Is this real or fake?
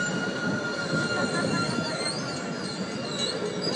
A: real